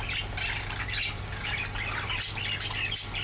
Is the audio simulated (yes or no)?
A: no